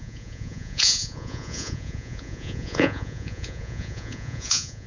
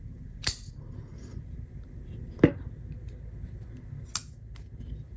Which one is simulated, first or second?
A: first